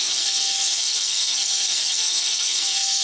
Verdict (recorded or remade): remade